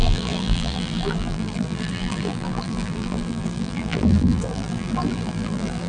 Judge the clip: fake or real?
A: fake